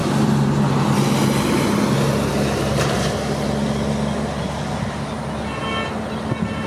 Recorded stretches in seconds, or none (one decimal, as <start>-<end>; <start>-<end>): 0.0-6.7